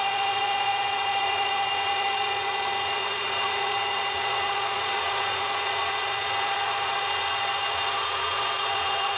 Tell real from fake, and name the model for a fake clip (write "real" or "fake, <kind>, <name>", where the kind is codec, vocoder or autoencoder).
fake, vocoder, Vocos